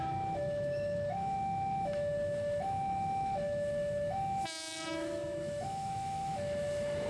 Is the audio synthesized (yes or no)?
yes